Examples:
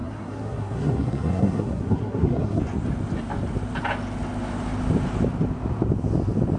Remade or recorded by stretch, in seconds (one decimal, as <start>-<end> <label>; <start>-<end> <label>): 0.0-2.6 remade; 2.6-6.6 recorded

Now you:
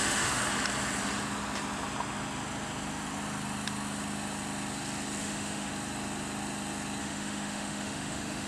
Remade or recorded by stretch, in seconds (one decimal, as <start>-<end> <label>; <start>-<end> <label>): 0.0-0.4 remade; 0.4-5.2 recorded; 5.2-5.7 remade; 5.7-7.0 recorded; 7.0-8.5 remade

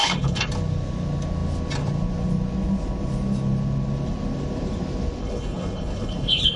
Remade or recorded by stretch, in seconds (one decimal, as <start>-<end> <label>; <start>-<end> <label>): 0.0-0.5 remade; 0.5-5.2 recorded; 5.2-6.6 remade

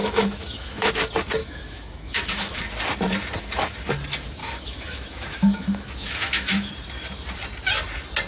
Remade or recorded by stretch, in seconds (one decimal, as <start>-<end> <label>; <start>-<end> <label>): 0.0-0.9 remade; 0.9-1.4 recorded; 1.4-2.6 remade; 2.6-4.4 recorded; 4.4-6.7 remade; 6.7-8.3 recorded

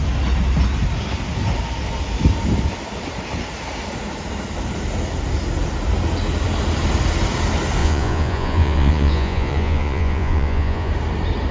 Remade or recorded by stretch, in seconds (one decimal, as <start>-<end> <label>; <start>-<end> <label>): 0.0-7.8 recorded; 7.8-10.9 remade; 10.9-11.5 recorded